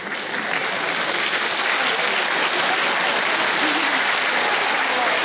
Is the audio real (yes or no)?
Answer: yes